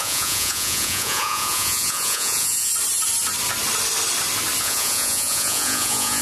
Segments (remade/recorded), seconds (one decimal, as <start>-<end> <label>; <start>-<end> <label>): 0.0-2.7 remade; 2.7-4.6 recorded; 4.6-6.2 remade